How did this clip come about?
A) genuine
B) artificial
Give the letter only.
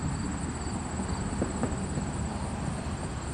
A